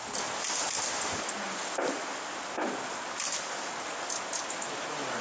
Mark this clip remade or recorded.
recorded